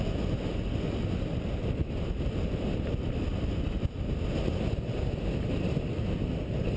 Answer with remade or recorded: recorded